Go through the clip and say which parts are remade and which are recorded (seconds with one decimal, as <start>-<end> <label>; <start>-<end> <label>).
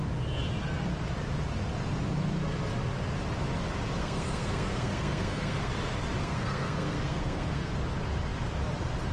0.0-4.0 recorded; 4.0-5.7 remade; 5.7-6.2 recorded; 6.2-7.7 remade; 7.7-9.1 recorded